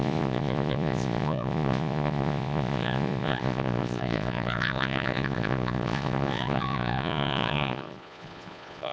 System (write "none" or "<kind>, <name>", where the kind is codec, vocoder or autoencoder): vocoder, Vocos